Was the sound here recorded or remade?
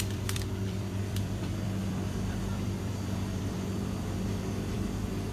remade